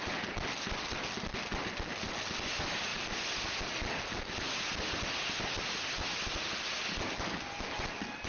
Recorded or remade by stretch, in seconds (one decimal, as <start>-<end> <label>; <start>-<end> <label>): 0.0-8.3 recorded